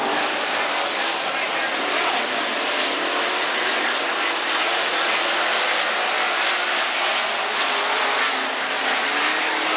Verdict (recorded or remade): recorded